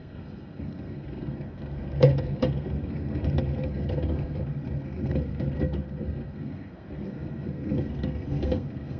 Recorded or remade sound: remade